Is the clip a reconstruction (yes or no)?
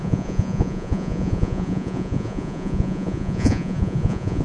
yes